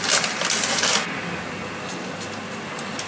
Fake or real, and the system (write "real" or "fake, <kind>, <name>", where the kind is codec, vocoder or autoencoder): real